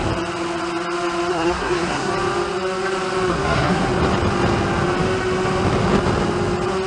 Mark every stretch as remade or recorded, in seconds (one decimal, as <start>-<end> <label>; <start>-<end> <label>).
0.0-1.3 recorded; 1.3-2.1 remade; 2.1-3.3 recorded; 3.3-3.9 remade; 3.9-6.9 recorded